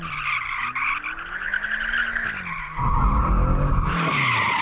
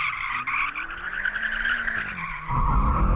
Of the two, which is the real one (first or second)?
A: first